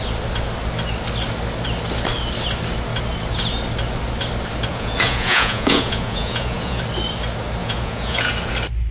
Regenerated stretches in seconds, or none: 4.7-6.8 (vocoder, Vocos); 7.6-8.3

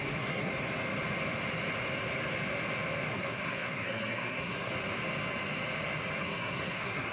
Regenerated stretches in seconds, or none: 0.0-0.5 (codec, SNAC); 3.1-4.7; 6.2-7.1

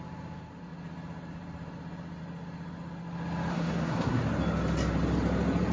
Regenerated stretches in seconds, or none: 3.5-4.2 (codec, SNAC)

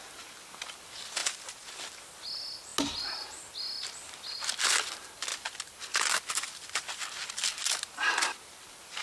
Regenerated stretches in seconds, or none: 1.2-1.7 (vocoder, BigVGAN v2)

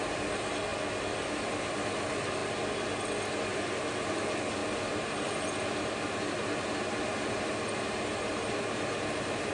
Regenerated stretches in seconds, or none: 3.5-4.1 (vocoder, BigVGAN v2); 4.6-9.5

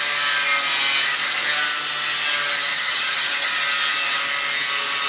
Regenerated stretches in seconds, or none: 2.7-3.5 (vocoder, HiFi-GAN)

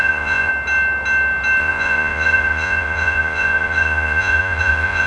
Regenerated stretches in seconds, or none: 0.0-0.5 (vocoder, Vocos); 1.6-5.1

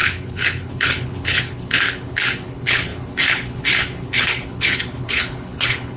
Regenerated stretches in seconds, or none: 0.0-6.0 (codec, HILCodec)